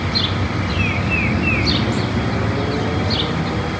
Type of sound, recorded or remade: recorded